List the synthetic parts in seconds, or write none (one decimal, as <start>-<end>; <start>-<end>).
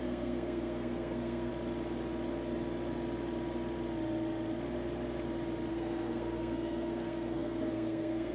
0.0-1.5; 5.7-8.3